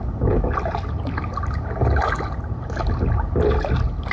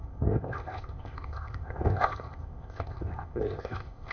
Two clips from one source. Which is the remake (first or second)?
second